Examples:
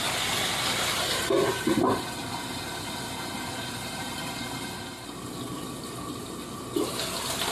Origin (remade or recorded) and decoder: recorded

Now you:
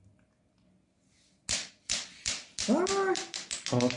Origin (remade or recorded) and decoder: recorded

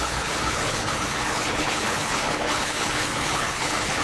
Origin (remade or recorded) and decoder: remade, codec, HILCodec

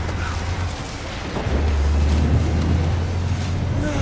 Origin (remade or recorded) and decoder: recorded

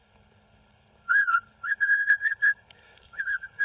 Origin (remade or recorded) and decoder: remade, codec, HILCodec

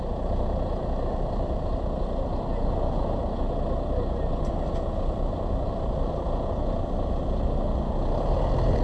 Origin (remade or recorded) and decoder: recorded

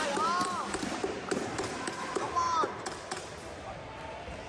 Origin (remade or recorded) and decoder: recorded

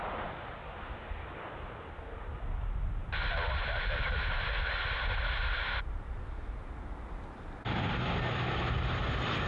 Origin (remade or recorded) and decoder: recorded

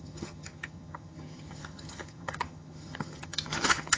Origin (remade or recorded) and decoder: remade, vocoder, HiFi-GAN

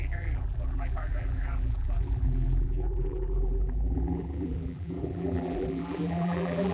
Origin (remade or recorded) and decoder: remade, vocoder, BigVGAN v2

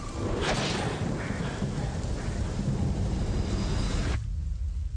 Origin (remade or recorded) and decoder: recorded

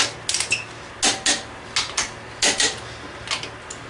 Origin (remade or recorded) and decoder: recorded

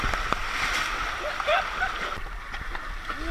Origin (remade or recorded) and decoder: recorded